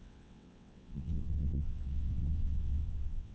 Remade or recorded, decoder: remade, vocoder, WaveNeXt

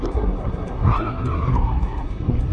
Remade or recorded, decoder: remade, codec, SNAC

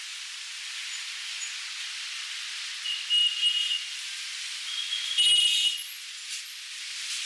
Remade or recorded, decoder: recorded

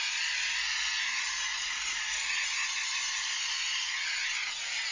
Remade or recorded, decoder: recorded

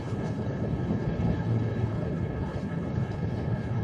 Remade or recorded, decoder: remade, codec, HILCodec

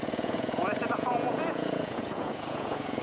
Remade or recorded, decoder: remade, vocoder, Vocos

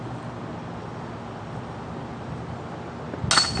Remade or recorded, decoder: recorded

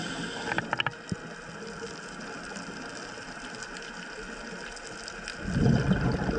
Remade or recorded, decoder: recorded